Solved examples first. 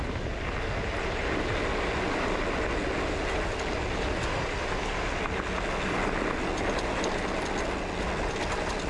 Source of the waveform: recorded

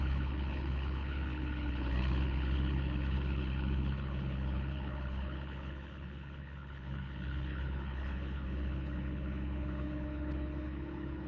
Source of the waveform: remade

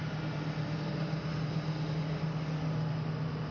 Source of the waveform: recorded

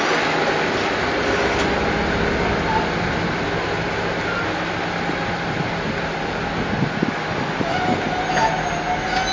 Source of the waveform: recorded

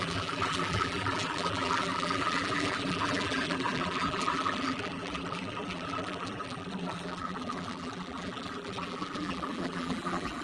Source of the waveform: remade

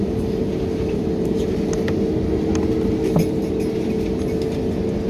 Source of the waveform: recorded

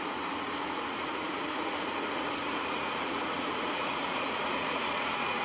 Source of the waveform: remade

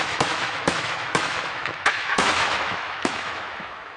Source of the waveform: remade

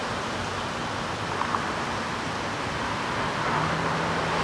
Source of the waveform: remade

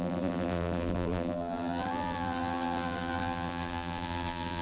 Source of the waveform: remade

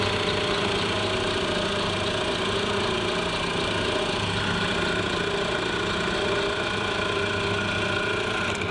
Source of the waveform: recorded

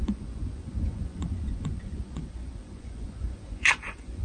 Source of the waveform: remade